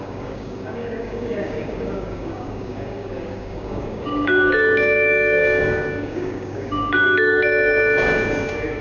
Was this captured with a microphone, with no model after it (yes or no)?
no